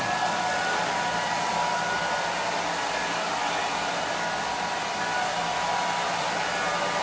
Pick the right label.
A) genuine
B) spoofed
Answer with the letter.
A